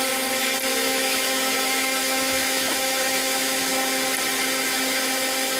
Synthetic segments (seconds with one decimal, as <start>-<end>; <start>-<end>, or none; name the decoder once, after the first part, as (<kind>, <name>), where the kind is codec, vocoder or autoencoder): 0.7-3.6 (autoencoder, DAC-VAE)